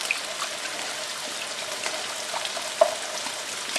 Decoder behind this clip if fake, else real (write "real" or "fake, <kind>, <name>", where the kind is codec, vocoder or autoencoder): real